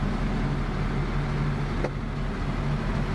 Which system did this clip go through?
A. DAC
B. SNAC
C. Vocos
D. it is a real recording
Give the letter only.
D